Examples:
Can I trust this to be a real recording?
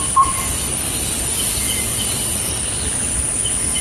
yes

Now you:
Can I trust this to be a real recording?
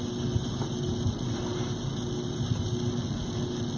yes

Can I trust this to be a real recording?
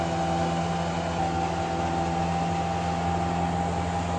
yes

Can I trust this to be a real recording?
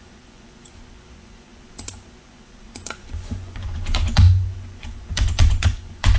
no